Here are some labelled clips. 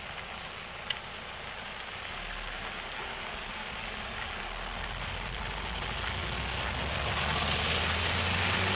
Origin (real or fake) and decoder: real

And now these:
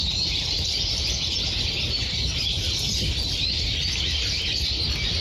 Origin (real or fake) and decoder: real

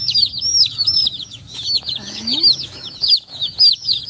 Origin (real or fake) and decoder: fake, autoencoder, DAC-VAE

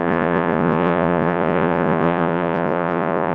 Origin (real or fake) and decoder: fake, vocoder, Vocos